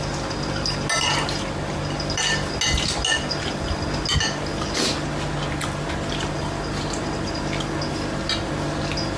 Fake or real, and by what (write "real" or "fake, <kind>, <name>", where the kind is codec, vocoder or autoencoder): real